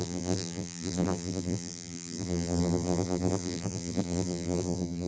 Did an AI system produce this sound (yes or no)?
yes